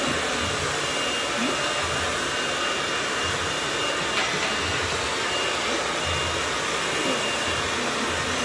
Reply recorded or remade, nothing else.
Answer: recorded